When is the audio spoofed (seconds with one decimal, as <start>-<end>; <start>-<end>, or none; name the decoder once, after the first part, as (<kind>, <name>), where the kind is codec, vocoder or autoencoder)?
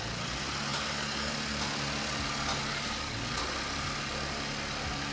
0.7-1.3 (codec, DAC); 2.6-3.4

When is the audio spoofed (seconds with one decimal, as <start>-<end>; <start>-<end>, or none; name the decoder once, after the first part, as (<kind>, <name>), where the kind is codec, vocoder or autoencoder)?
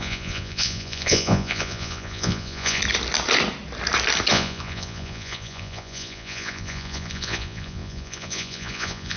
0.0-2.8 (vocoder, Vocos); 4.3-9.2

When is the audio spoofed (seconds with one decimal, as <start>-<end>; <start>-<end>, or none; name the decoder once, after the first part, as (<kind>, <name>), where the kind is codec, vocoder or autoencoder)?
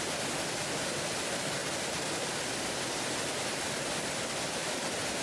none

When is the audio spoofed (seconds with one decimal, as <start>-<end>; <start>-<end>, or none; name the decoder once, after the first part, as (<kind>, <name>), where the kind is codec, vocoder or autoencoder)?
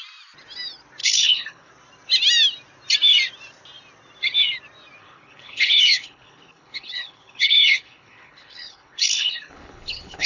1.0-1.7 (codec, HILCodec); 5.0-10.3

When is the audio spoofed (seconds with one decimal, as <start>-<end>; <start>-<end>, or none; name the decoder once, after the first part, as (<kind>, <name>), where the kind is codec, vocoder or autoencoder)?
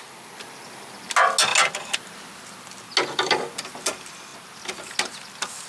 none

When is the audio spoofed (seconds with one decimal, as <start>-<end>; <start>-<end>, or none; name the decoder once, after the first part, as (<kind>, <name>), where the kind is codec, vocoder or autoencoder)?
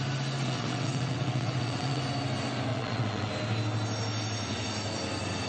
0.4-2.0 (vocoder, WaveNeXt); 2.7-3.3